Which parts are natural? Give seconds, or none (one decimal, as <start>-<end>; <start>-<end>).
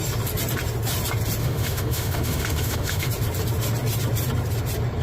0.0-1.4; 3.1-5.0